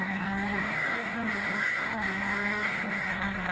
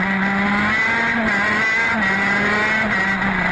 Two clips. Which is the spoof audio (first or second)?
first